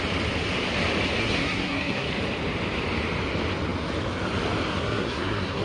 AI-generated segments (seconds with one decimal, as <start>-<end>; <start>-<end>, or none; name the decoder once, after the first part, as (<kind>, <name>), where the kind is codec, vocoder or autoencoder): 1.2-2.1 (codec, SNAC); 4.7-5.6